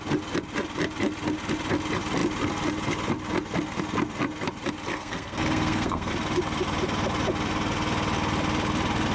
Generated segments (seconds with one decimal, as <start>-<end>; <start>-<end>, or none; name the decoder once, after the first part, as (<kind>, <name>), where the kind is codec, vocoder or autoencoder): 4.9-6.1 (codec, SNAC)